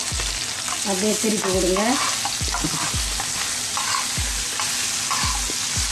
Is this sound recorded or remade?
recorded